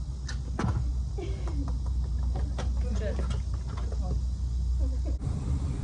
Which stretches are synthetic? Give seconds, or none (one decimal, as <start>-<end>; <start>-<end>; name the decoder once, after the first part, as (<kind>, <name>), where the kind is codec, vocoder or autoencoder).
0.9-1.7 (vocoder, BigVGAN v2)